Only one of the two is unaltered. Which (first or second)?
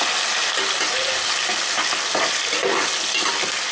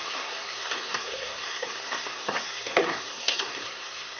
first